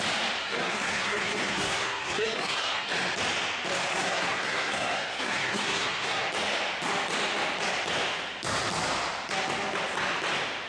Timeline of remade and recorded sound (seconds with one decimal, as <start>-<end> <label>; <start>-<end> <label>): 0.0-0.4 recorded; 0.4-2.9 remade; 2.9-3.9 recorded; 3.9-6.3 remade; 6.3-10.7 recorded